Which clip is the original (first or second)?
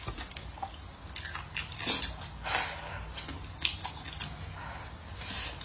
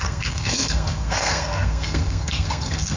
first